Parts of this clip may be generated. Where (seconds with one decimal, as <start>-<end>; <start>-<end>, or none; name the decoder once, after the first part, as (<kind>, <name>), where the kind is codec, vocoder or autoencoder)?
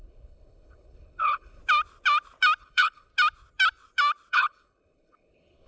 0.0-1.6 (codec, HILCodec); 2.6-3.1; 4.3-5.7